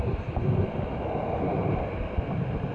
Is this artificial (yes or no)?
no